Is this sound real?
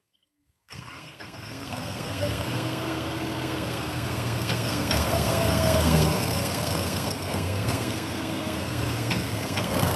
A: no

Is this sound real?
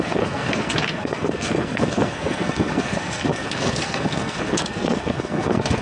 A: no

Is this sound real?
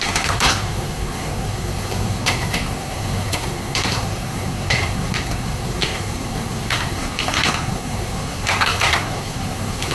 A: no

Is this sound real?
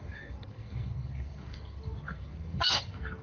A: no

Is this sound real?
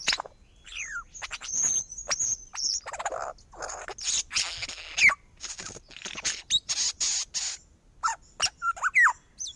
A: yes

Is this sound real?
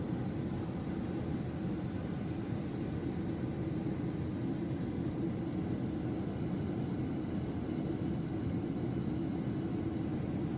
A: yes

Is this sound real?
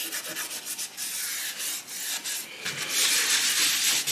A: yes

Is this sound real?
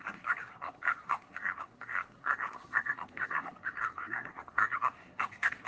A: no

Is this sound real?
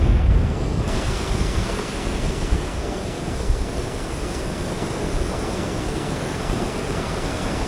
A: no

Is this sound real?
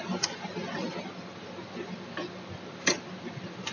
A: yes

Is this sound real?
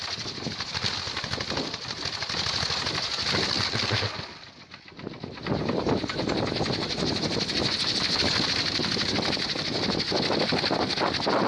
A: yes